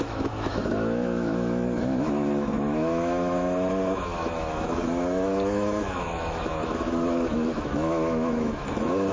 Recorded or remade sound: remade